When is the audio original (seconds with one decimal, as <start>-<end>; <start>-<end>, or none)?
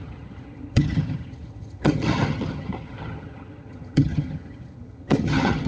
none